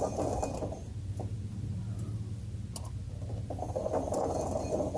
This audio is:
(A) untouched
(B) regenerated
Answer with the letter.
A